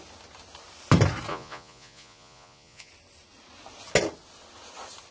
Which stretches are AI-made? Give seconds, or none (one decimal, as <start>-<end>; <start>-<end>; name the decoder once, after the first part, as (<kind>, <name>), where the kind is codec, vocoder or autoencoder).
1.3-2.9 (vocoder, Vocos)